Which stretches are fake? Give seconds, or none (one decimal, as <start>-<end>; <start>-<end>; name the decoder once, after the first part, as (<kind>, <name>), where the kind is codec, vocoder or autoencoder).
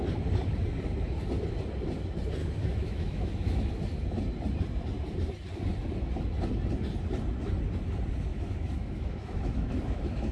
2.4-3.6 (autoencoder, DAC-VAE); 8.3-10.3